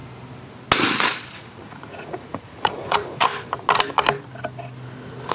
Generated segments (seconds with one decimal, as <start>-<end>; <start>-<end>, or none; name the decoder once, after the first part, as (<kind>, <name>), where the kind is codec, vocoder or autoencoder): 1.3-3.3 (vocoder, Vocos)